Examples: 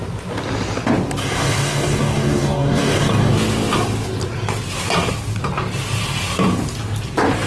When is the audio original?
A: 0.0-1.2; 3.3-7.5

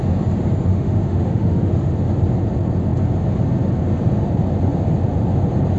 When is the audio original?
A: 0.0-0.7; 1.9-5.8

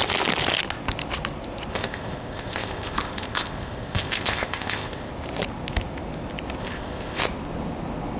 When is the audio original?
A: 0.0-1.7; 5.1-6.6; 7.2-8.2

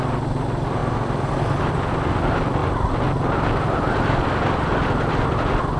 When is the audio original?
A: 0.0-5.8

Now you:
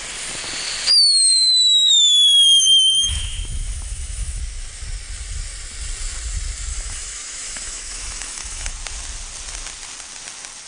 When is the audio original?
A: 0.0-0.9; 4.4-6.7; 8.7-10.7